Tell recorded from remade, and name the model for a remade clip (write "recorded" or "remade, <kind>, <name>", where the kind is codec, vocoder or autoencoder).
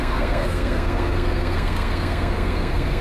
remade, codec, SNAC